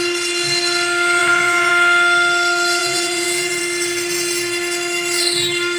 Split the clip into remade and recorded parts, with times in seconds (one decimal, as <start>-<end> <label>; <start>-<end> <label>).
0.0-1.2 recorded; 1.2-1.7 remade; 1.7-2.8 recorded; 2.8-3.6 remade; 3.6-5.8 recorded